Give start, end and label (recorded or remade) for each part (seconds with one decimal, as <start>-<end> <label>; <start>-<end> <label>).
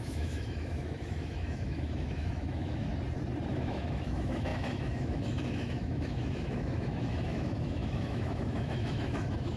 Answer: 0.0-2.9 remade; 2.9-3.5 recorded; 3.5-9.6 remade